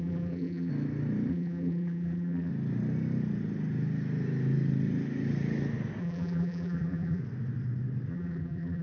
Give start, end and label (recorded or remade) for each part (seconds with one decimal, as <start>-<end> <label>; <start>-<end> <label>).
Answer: 0.0-0.7 remade; 0.7-1.3 recorded; 1.3-2.5 remade; 2.5-6.0 recorded; 6.0-7.2 remade; 7.2-8.1 recorded; 8.1-8.8 remade